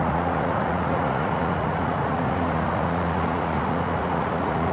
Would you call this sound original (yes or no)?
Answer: no